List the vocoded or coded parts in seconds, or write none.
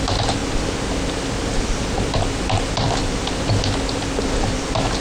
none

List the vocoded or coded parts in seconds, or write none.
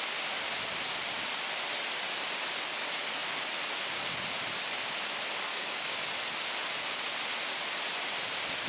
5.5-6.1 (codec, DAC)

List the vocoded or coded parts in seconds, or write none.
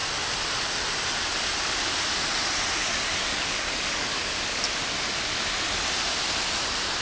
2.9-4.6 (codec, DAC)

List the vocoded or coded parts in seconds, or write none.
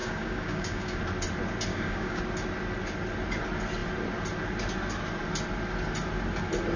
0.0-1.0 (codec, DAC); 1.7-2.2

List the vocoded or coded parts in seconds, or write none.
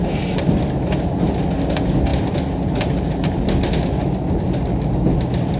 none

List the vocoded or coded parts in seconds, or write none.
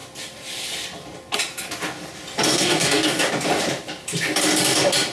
2.5-3.3 (codec, DAC)